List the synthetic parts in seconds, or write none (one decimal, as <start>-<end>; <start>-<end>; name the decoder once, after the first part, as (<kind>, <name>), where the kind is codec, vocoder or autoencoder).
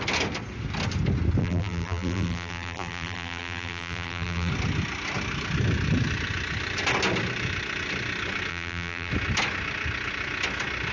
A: 1.4-4.5 (vocoder, BigVGAN v2); 8.5-9.1